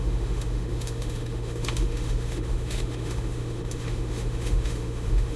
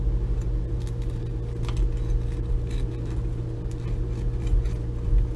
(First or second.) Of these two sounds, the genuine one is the second